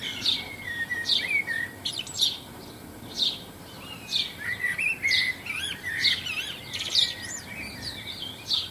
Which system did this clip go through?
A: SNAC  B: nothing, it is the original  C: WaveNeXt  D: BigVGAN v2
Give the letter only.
D